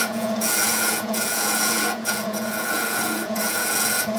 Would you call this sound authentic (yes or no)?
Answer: no